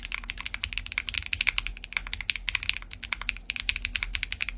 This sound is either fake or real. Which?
real